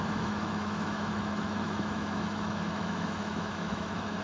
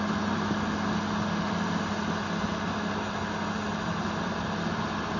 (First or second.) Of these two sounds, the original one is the second